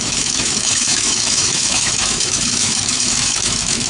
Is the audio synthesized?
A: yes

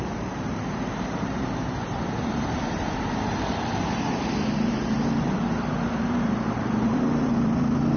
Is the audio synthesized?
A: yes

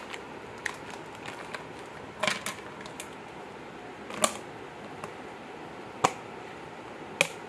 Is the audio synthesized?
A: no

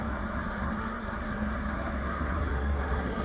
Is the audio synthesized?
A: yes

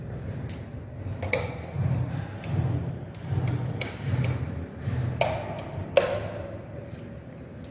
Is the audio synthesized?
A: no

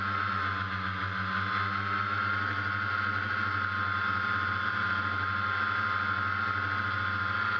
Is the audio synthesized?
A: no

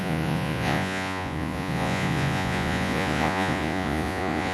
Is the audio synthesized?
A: yes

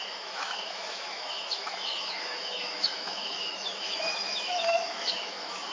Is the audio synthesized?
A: yes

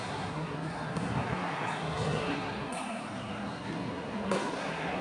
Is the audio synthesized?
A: yes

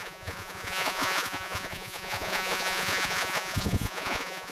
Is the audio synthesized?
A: yes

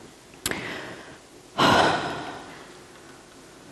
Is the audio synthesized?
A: no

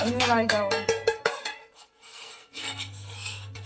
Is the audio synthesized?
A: yes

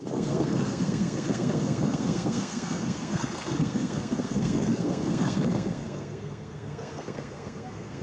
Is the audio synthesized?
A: yes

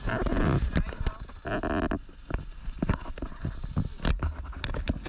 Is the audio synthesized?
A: no